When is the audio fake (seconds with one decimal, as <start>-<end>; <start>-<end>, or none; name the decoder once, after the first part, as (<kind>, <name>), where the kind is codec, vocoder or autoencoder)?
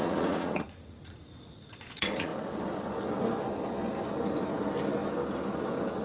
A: 0.0-2.3 (vocoder, Vocos)